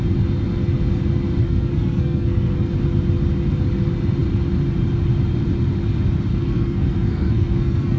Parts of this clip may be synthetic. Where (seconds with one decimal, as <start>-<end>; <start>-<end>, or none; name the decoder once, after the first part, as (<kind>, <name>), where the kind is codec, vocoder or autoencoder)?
1.4-2.7 (codec, SNAC); 6.3-8.0